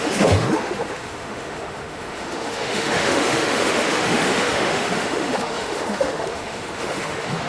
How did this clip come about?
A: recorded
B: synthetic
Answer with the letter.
B